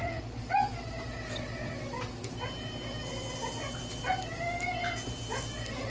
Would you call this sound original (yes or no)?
yes